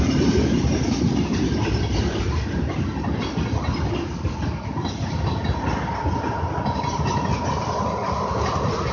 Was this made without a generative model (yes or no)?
yes